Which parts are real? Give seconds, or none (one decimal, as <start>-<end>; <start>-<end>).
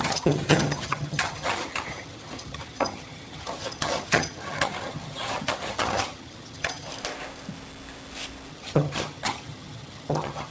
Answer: 6.9-8.5